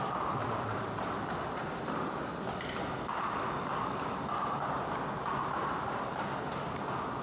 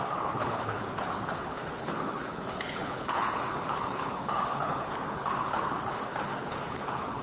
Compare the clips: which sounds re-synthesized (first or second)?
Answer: second